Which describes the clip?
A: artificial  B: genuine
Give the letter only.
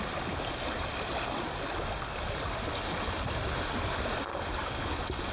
B